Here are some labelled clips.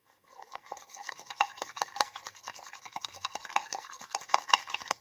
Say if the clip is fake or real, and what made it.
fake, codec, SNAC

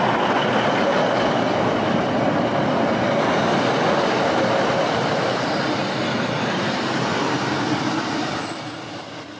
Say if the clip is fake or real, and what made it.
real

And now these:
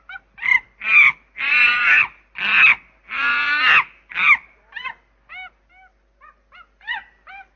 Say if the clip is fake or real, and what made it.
real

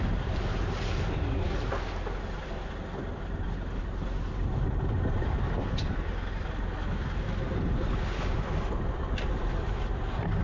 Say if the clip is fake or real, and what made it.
real